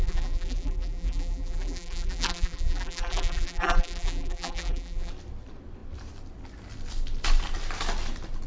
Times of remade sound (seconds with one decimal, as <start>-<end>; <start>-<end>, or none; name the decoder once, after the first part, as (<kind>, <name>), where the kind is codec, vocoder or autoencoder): 0.0-5.1 (vocoder, BigVGAN v2)